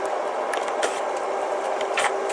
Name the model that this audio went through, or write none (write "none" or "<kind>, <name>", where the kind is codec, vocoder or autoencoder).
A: none